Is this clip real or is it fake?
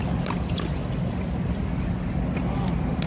real